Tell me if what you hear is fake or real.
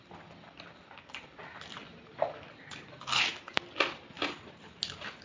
real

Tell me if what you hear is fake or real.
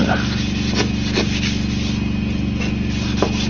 real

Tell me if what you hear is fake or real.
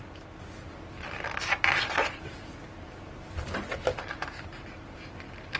real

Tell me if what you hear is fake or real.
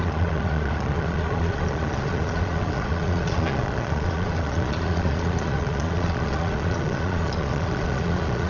fake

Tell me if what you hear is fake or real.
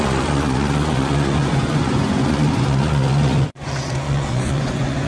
fake